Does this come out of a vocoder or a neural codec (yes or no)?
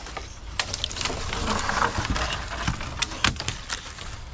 no